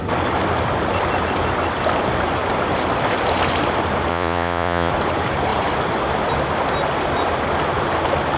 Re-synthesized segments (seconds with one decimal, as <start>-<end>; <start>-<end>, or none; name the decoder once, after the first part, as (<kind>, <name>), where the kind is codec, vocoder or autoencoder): 4.1-4.9 (vocoder, Vocos)